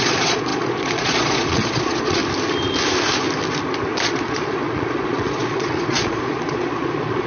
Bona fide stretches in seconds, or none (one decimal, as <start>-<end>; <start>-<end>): 2.2-3.9